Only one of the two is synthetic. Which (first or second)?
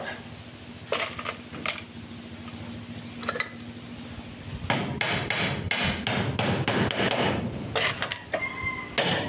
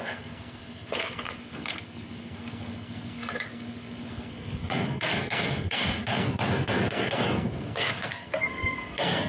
second